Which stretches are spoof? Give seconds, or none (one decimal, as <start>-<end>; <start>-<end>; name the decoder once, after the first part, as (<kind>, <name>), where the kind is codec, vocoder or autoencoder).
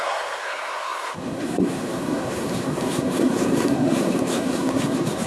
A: 0.0-5.3 (codec, SNAC)